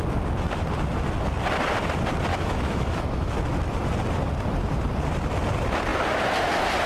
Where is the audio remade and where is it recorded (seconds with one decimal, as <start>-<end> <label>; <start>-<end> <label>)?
0.0-2.3 recorded; 2.3-3.3 remade; 3.3-6.9 recorded